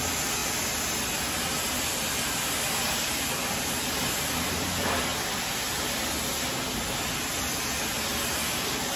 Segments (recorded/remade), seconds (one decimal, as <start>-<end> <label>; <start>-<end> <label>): 0.0-9.0 recorded